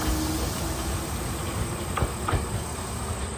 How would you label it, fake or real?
real